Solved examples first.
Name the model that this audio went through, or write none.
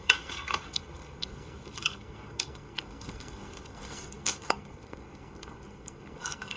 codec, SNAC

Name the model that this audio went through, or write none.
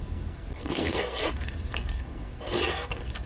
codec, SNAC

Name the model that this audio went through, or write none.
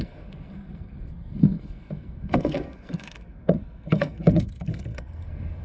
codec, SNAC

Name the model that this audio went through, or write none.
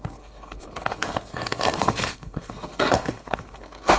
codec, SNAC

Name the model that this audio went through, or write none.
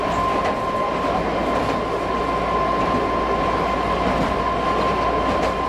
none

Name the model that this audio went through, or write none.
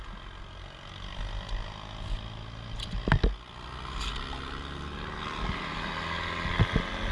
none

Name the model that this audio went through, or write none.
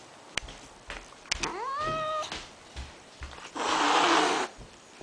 none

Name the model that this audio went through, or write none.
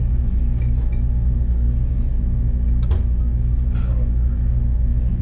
none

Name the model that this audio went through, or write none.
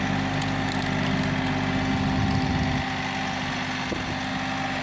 none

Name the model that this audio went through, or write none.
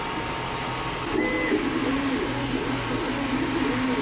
none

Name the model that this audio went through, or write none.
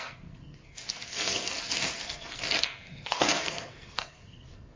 codec, SNAC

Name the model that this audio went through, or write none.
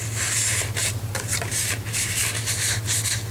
none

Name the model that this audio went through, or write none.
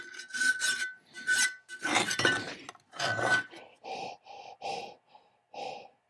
none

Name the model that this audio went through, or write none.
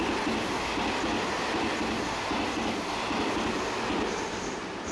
none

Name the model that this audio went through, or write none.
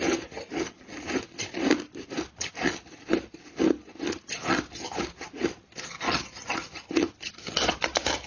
none